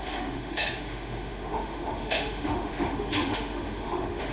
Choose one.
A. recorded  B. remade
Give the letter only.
B